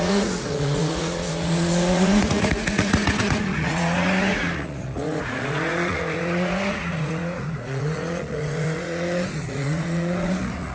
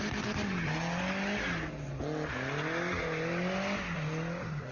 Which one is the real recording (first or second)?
second